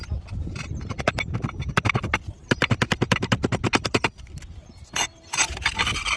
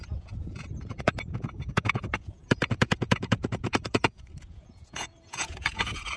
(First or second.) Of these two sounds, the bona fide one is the first